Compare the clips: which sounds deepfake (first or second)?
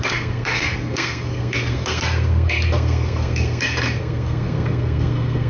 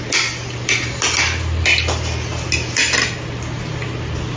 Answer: first